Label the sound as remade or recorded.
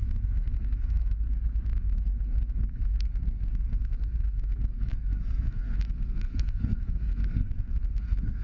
remade